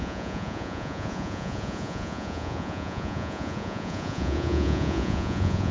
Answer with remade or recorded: remade